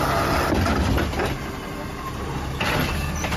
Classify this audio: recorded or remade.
recorded